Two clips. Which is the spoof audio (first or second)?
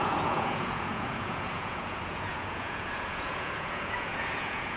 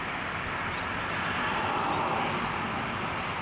first